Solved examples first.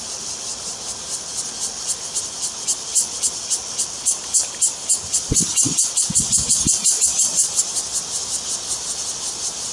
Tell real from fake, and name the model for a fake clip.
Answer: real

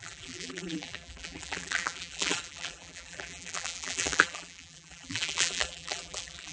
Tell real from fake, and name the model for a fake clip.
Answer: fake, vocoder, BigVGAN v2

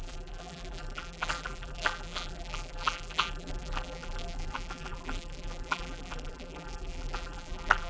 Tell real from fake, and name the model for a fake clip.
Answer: fake, vocoder, BigVGAN v2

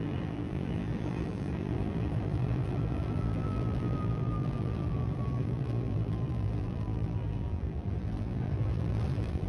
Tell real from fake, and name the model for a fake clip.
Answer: fake, vocoder, BigVGAN v2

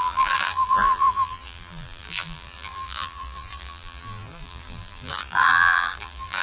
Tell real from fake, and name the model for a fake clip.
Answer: fake, vocoder, BigVGAN v2